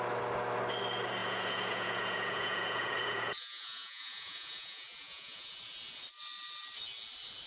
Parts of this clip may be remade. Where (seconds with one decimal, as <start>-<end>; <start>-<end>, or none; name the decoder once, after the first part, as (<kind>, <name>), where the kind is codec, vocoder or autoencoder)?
1.2-5.5 (vocoder, Vocos)